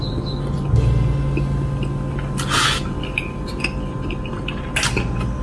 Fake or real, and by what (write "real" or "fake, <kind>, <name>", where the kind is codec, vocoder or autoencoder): real